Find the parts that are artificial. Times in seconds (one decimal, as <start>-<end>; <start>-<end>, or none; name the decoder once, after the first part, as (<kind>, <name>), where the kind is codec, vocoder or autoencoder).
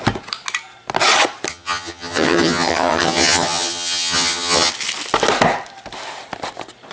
1.5-4.7 (vocoder, HiFi-GAN)